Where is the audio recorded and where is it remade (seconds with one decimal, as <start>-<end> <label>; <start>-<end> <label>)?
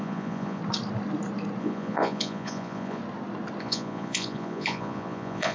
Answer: 0.0-0.6 remade; 0.6-1.6 recorded; 1.6-3.0 remade; 3.0-3.6 recorded; 3.6-5.5 remade